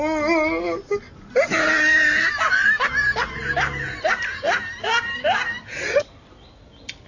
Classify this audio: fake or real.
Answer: real